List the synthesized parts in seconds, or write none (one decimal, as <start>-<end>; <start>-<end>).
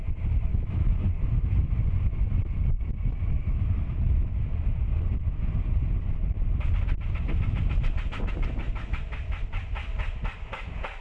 0.5-1.1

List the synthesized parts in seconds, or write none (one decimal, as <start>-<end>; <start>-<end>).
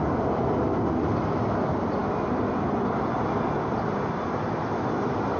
none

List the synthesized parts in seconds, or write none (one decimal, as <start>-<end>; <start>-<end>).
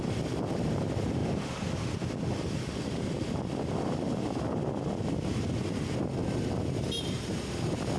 none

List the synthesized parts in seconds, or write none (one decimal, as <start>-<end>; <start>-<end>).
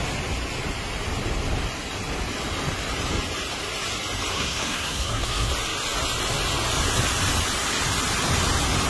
4.3-5.5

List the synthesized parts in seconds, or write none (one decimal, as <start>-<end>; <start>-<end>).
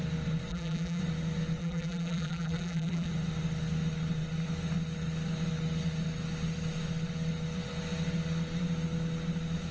0.5-1.0; 1.6-3.1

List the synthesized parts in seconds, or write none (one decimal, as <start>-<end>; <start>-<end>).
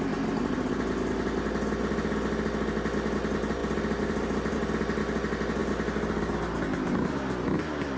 3.6-5.0